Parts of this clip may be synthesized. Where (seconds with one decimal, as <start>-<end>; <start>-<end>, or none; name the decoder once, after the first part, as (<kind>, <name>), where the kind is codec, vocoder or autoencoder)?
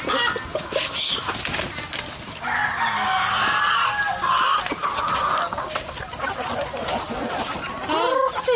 none